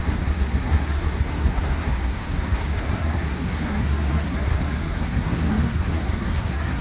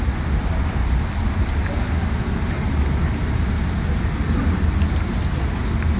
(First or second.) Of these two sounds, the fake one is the first